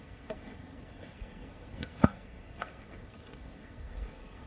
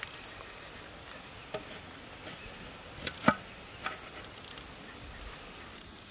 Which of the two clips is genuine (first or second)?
second